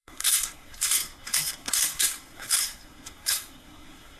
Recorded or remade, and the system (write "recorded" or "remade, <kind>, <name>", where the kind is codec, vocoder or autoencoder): remade, codec, SNAC